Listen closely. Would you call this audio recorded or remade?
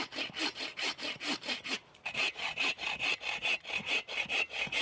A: remade